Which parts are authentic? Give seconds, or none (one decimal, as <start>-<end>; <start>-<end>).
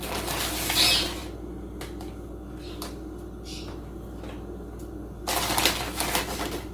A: 0.0-6.7